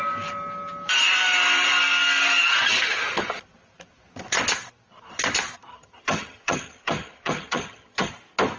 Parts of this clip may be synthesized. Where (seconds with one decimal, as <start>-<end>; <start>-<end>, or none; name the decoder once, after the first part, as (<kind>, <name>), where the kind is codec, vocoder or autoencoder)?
5.7-8.1 (vocoder, HiFi-GAN)